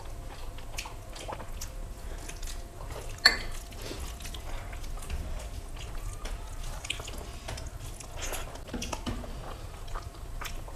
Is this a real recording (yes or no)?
yes